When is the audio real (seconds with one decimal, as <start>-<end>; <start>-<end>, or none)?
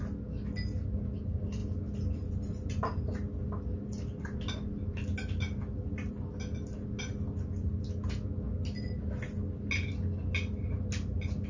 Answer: 0.0-11.5